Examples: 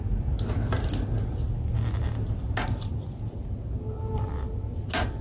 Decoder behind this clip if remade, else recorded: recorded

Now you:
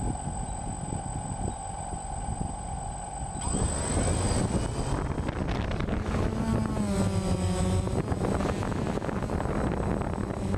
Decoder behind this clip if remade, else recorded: recorded